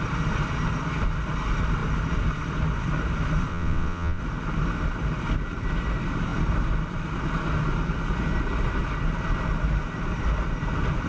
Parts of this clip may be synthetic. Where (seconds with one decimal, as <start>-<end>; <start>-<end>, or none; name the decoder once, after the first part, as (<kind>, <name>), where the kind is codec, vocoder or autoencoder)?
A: 3.5-4.2 (vocoder, WaveNeXt)